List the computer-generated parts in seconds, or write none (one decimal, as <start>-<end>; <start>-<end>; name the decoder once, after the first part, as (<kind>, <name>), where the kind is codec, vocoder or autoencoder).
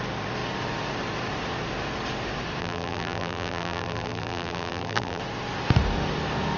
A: 2.6-5.2 (vocoder, BigVGAN v2)